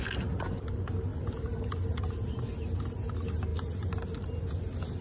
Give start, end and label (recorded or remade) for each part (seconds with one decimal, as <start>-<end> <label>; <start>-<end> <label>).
0.0-5.0 recorded